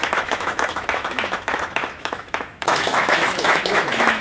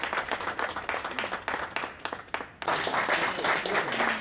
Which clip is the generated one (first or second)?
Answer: first